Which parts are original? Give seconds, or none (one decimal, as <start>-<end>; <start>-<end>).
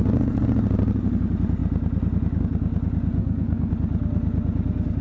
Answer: 0.0-3.2; 3.7-5.0